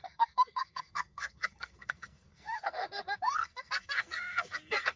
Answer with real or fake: fake